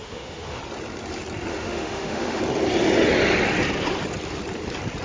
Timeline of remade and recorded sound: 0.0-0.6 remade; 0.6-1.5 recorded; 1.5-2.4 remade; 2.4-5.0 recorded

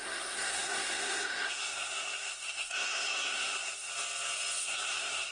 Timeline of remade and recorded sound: 0.0-3.9 remade; 3.9-4.6 recorded; 4.6-5.3 remade

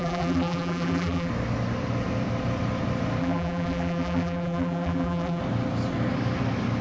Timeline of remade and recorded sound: 0.0-1.3 remade; 1.3-3.2 recorded; 3.2-5.4 remade; 5.4-6.8 recorded